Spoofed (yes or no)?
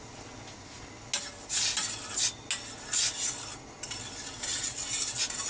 no